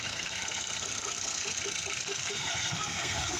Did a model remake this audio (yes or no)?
yes